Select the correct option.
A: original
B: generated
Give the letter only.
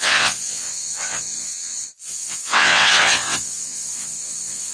B